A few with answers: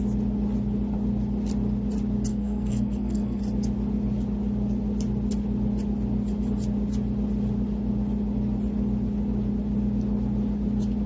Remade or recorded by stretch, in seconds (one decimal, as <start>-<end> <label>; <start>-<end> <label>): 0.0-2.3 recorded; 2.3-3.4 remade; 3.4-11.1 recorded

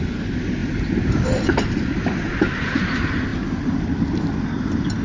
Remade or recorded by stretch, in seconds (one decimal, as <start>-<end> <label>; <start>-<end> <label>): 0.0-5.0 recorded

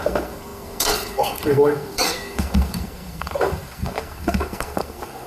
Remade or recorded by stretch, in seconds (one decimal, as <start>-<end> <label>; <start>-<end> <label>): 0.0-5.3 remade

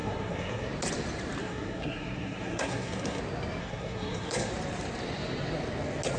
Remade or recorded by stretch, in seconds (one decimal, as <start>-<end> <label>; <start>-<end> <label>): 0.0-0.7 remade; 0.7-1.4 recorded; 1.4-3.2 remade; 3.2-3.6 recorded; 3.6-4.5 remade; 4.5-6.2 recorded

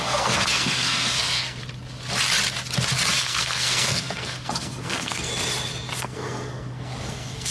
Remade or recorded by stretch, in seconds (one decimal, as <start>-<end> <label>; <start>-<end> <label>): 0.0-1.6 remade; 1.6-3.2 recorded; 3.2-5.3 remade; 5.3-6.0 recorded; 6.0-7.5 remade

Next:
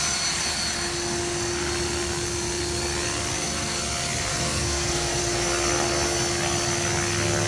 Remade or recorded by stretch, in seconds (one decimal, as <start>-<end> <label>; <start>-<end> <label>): 0.0-3.3 recorded; 3.3-3.8 remade; 3.8-4.3 recorded; 4.3-5.2 remade; 5.2-7.5 recorded

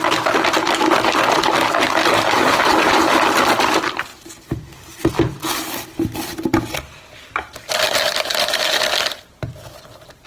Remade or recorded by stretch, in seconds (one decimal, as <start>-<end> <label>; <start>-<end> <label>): 0.0-10.3 recorded